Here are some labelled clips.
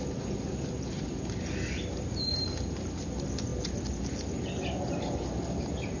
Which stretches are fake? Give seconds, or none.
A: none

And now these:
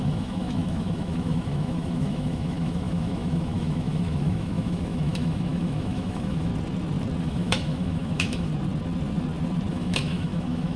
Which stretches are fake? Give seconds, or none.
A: 0.0-6.5 (autoencoder, DAC-VAE); 7.2-8.5; 9.7-10.8

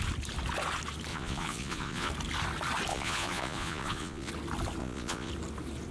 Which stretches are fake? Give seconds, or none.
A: 1.1-2.1 (vocoder, Vocos); 2.9-4.3; 4.8-5.3

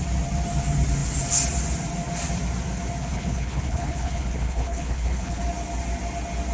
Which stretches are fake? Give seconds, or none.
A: 3.0-5.4 (codec, HILCodec)

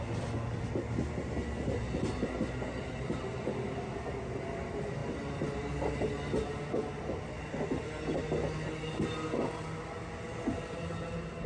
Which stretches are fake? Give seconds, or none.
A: none

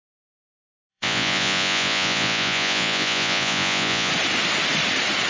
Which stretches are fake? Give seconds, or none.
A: 0.9-4.1 (vocoder, Vocos)

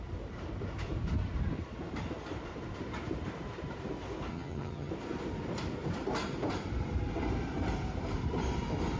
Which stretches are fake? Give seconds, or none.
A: 4.3-4.9 (vocoder, HiFi-GAN)